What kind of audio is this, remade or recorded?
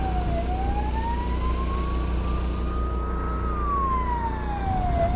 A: recorded